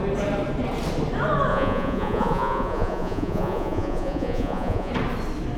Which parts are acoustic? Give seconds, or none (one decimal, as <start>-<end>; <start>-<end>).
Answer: 0.0-1.5; 4.9-5.6